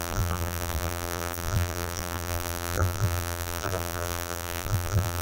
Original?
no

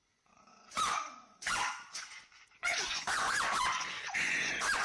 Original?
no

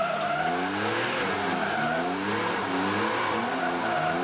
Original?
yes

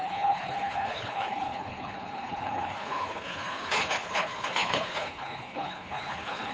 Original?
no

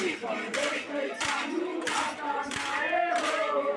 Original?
yes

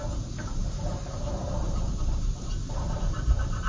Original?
no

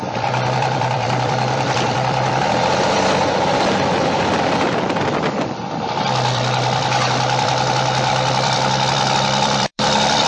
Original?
no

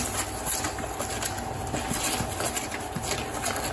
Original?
yes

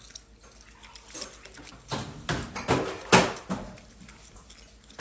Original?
yes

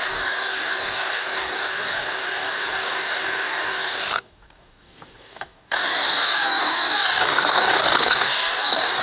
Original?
no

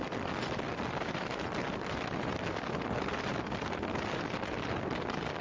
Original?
yes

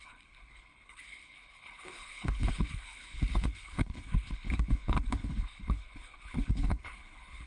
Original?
no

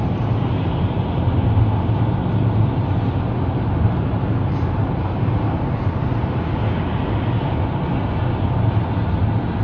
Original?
yes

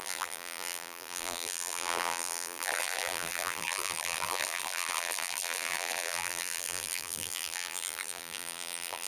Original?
no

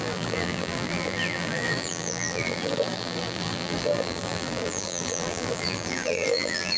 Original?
no